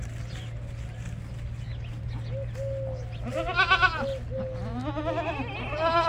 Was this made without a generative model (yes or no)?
yes